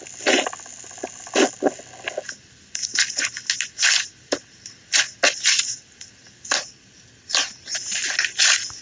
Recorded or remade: recorded